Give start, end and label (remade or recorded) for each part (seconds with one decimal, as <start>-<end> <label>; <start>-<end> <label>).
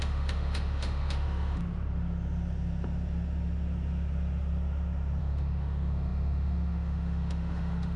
0.0-1.6 remade; 1.6-5.2 recorded; 5.2-8.0 remade